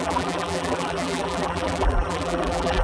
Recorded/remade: remade